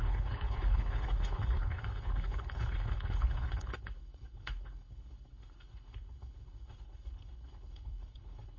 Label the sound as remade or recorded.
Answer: remade